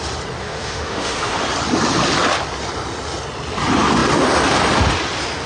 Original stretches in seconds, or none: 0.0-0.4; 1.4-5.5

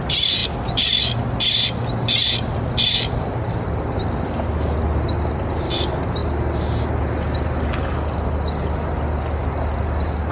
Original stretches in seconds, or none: 0.0-10.3

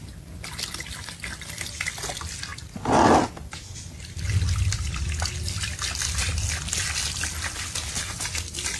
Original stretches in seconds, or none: 0.0-8.8